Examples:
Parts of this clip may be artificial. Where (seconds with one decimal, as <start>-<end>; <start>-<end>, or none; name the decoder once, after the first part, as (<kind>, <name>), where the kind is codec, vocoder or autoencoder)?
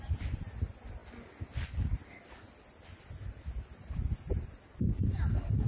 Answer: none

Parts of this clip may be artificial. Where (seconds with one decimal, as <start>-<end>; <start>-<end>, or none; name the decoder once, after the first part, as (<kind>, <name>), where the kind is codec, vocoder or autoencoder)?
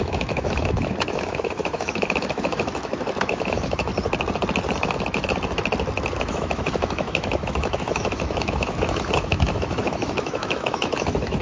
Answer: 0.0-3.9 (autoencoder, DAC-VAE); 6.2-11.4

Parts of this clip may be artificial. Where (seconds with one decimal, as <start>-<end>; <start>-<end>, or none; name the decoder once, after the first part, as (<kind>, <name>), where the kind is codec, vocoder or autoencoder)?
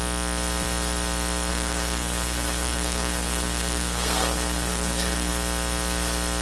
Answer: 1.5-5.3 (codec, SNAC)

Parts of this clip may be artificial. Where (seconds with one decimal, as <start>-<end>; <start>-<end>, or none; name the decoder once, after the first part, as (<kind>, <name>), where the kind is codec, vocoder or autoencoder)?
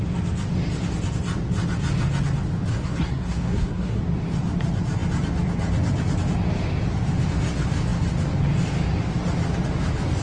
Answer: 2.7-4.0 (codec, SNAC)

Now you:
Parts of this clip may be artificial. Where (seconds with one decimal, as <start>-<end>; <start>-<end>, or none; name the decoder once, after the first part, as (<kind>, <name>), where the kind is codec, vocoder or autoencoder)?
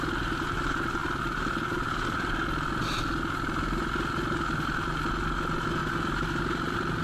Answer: none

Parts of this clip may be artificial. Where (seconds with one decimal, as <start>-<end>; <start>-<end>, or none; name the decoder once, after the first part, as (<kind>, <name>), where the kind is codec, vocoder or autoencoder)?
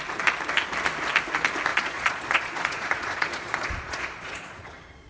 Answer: 1.7-5.1 (vocoder, Vocos)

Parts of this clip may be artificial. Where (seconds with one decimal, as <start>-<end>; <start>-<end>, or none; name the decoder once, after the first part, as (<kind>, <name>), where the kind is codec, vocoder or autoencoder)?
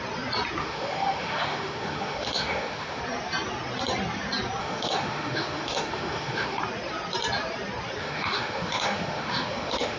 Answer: 0.6-3.0 (autoencoder, DAC-VAE); 4.6-6.6; 8.0-10.0